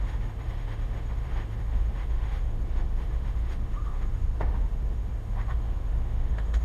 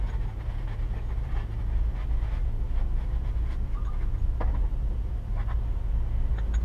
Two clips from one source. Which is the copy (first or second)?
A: first